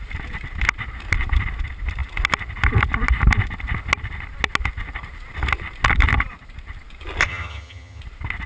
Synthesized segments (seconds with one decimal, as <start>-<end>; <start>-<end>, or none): 7.2-8.0